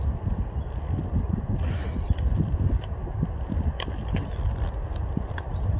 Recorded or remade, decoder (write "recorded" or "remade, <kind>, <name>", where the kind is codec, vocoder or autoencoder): remade, vocoder, BigVGAN v2